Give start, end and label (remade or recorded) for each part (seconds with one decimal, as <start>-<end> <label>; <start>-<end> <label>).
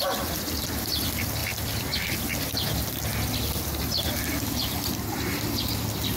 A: 0.0-6.2 recorded